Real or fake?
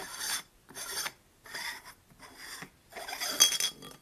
real